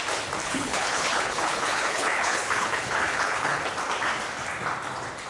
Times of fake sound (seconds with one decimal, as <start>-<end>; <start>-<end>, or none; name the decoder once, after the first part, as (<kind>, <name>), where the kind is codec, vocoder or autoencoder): 0.4-3.6 (codec, HILCodec)